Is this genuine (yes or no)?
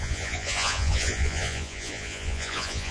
no